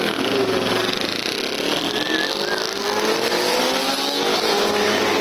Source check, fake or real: real